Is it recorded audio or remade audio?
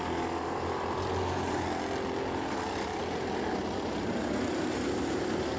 recorded